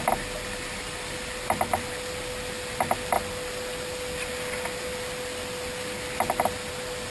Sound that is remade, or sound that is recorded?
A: recorded